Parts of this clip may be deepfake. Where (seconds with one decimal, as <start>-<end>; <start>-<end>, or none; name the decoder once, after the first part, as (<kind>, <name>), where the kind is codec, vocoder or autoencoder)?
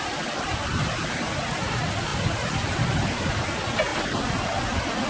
none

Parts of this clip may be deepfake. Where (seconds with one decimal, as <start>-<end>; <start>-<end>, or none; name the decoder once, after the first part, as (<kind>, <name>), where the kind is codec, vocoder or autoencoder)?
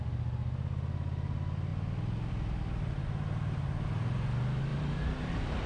4.7-5.3 (vocoder, BigVGAN v2)